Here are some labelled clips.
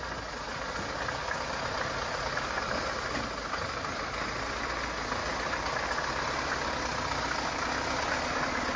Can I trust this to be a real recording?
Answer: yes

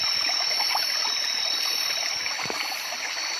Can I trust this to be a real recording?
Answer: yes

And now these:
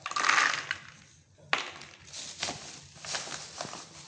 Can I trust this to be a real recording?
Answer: yes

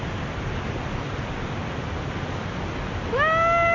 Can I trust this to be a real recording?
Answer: yes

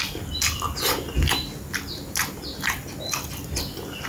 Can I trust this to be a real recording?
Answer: yes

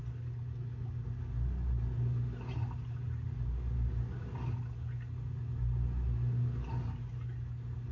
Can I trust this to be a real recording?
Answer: yes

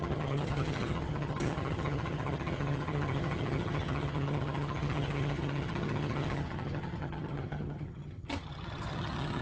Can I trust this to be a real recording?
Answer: no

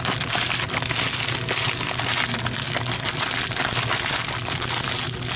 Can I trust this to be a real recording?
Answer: yes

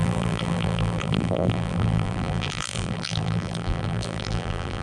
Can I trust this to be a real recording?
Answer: no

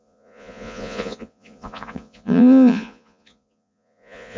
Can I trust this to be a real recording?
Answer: no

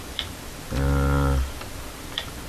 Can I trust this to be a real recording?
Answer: yes